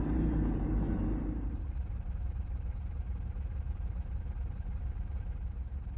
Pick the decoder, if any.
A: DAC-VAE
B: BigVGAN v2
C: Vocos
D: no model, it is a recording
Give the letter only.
B